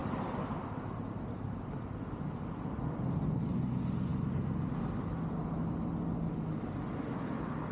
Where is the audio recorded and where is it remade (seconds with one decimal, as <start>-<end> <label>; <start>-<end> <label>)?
0.0-7.7 recorded